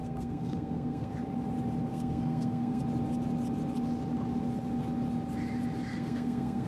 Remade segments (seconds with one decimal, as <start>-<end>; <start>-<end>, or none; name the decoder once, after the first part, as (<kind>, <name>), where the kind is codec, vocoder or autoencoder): 0.0-1.1 (codec, SNAC); 1.9-2.8; 5.9-6.7